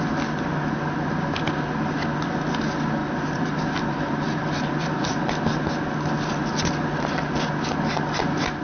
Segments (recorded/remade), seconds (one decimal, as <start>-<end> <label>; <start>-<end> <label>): 0.0-3.0 recorded; 3.0-5.4 remade; 5.4-8.6 recorded